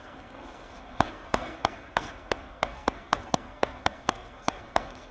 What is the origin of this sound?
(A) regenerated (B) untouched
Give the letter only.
A